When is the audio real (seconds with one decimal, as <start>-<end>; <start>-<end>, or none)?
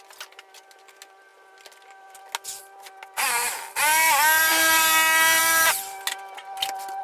0.0-7.0